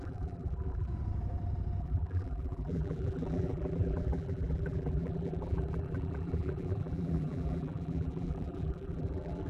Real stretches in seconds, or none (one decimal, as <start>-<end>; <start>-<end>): 0.9-1.8